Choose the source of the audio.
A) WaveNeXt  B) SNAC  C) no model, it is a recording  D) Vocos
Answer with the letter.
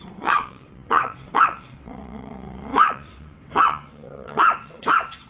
A